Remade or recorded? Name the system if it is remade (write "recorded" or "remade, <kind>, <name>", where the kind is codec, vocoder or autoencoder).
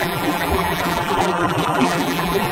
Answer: remade, vocoder, BigVGAN v2